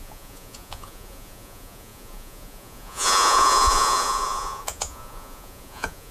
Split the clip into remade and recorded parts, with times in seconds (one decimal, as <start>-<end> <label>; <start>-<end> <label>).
0.0-6.1 remade